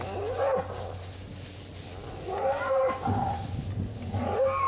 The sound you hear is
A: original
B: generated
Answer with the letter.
A